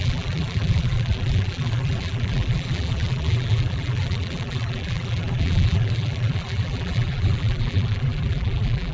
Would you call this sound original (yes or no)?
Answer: no